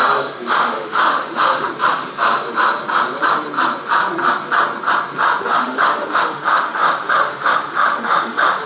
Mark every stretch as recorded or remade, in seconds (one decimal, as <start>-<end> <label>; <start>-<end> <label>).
0.0-0.5 recorded; 0.5-1.7 remade; 1.7-5.4 recorded; 5.4-8.7 remade